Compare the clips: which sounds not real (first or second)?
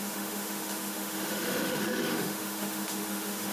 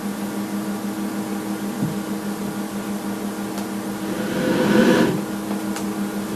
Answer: first